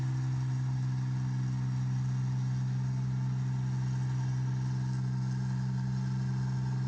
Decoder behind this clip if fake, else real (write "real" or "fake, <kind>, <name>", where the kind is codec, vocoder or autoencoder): real